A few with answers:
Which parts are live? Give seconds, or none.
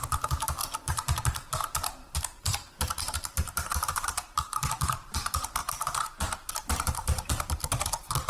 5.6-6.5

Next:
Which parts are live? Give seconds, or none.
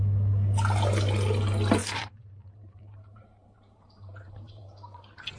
0.0-1.8; 5.0-5.4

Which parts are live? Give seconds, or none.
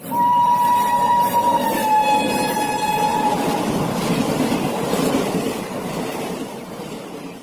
3.1-4.3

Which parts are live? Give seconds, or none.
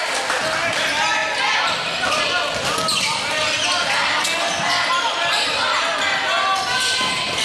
0.0-7.4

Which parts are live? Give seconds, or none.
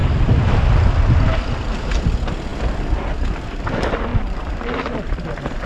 0.6-4.1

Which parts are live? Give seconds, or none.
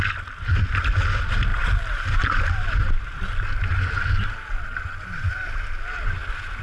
0.0-1.5; 2.8-6.6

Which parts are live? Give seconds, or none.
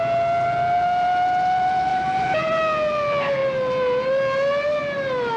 0.0-1.9; 2.5-5.4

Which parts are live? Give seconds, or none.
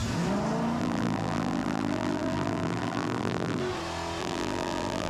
0.0-0.8; 3.6-4.2